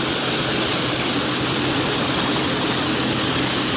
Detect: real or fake real